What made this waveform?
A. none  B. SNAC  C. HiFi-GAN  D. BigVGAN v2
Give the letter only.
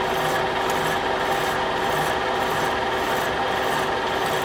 A